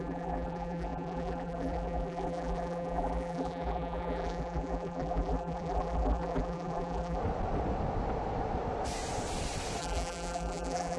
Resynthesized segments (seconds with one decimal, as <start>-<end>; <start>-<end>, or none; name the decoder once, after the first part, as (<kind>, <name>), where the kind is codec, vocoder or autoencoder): 0.0-7.2 (vocoder, BigVGAN v2); 9.8-11.0